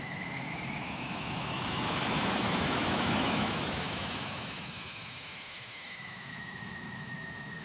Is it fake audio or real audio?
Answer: fake